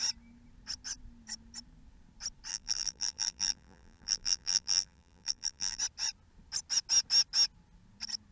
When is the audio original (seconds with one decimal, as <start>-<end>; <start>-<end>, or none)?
0.0-2.5; 5.8-8.3